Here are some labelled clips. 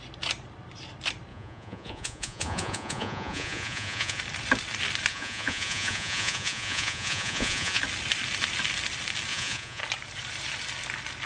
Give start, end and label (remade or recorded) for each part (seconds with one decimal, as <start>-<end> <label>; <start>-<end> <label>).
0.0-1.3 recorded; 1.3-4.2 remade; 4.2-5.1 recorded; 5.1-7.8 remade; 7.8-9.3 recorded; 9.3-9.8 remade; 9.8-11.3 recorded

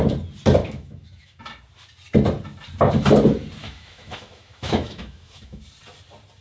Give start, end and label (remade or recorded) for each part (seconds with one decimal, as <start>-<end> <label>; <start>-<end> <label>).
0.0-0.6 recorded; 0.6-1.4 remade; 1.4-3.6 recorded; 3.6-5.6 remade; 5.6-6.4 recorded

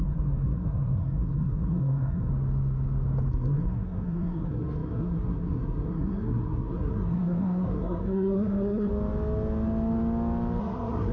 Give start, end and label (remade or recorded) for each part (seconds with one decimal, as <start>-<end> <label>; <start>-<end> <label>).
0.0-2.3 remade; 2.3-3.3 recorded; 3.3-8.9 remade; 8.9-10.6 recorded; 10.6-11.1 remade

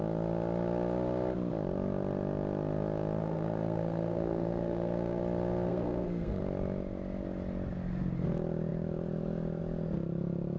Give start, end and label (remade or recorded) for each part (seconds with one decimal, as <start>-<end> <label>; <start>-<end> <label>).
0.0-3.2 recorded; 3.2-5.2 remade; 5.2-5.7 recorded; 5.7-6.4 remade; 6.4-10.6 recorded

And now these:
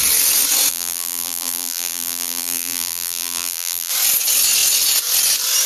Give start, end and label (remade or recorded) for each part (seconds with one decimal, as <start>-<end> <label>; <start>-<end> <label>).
0.0-0.7 recorded; 0.7-3.9 remade; 3.9-5.7 recorded

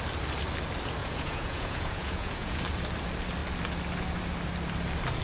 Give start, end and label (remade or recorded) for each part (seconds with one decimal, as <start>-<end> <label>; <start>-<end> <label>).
0.0-1.0 recorded; 1.0-2.6 remade; 2.6-5.2 recorded